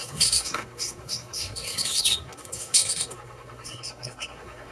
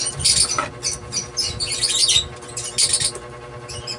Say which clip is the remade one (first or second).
first